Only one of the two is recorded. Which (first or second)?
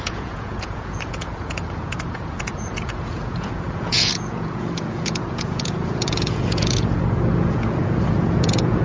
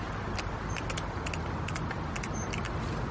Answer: second